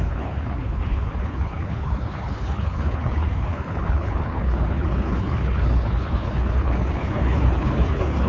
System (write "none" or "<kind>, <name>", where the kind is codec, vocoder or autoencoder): codec, HILCodec